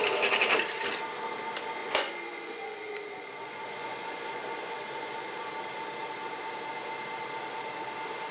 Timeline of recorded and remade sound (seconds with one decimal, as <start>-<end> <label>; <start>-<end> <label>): 0.0-1.8 recorded; 1.8-5.5 remade; 5.5-8.3 recorded